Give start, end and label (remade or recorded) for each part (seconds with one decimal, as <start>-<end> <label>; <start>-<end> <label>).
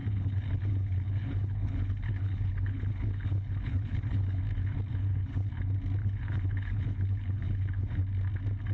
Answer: 0.0-4.4 remade; 4.4-4.9 recorded; 4.9-5.5 remade; 5.5-6.0 recorded; 6.0-8.0 remade; 8.0-8.7 recorded